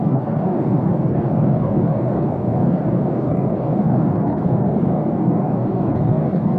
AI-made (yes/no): yes